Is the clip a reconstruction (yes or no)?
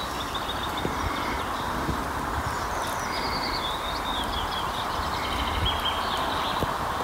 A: no